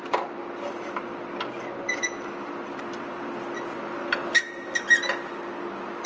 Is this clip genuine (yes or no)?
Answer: yes